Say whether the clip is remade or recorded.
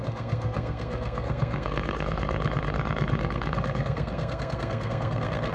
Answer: remade